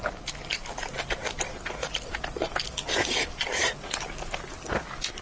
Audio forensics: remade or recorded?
recorded